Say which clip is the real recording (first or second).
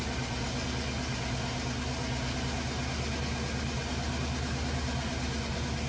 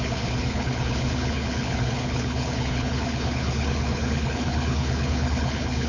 first